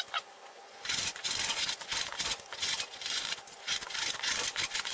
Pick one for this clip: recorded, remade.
remade